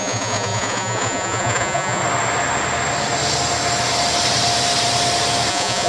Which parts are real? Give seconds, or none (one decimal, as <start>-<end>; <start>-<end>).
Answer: 2.0-5.5